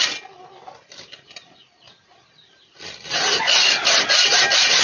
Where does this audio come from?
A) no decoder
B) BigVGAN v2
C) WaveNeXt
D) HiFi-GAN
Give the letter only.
A